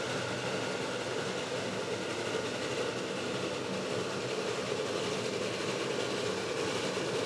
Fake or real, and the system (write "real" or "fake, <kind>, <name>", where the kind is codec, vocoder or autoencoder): real